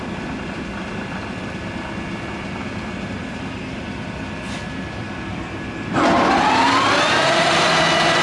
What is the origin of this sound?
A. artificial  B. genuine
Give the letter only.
B